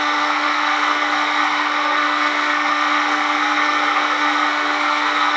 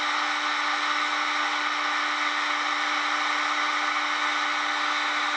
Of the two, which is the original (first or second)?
second